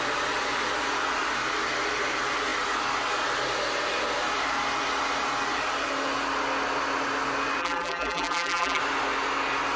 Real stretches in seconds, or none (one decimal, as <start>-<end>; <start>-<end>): 0.0-7.6; 8.8-9.8